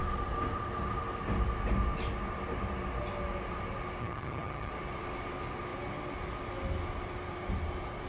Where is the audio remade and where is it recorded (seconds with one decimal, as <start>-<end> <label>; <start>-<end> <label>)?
0.0-4.0 recorded; 4.0-4.7 remade; 4.7-8.1 recorded